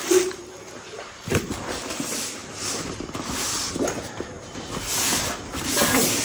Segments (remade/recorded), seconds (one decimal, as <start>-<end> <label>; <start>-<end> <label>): 0.0-6.2 recorded